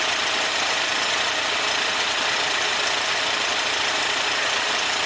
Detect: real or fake fake